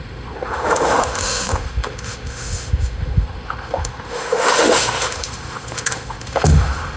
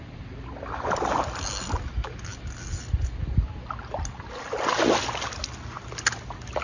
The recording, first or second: second